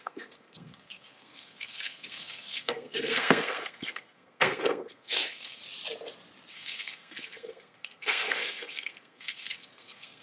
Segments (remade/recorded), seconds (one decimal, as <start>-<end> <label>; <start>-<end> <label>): 0.0-5.6 remade; 5.6-6.5 recorded; 6.5-10.2 remade